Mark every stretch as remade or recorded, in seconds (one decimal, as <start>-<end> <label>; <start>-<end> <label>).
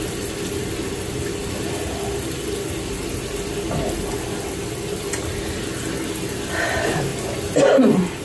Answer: 0.0-8.2 recorded